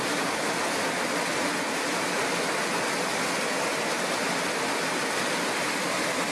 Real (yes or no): yes